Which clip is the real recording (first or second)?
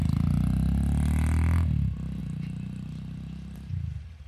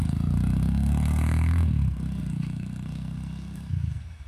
first